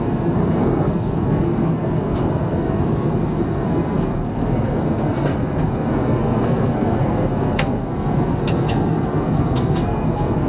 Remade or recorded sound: remade